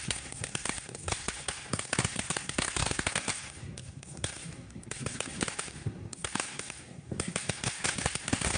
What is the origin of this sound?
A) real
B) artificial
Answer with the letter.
B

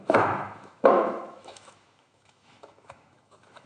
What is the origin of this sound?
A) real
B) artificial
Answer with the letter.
B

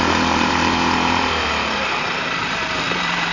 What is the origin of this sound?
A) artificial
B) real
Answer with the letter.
A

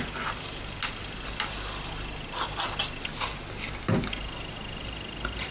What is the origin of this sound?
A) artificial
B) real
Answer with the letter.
B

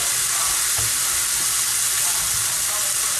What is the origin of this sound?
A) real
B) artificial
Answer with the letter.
A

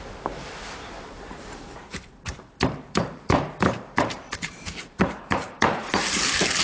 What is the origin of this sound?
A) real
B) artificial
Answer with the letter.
B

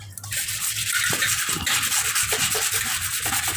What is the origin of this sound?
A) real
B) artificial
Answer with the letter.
A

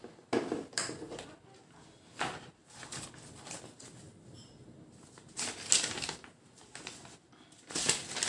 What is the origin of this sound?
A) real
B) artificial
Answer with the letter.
A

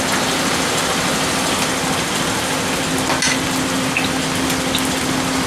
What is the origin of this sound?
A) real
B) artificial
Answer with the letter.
A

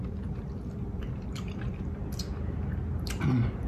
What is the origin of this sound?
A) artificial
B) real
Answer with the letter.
B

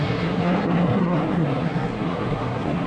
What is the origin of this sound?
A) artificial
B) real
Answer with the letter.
A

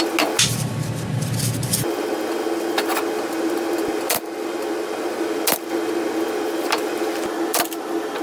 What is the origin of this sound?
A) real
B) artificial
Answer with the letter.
A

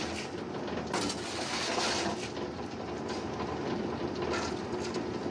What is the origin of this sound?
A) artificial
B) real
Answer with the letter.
B